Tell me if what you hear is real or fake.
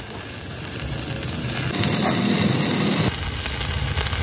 real